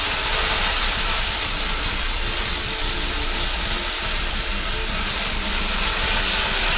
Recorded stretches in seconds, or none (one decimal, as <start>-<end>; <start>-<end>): 0.0-6.8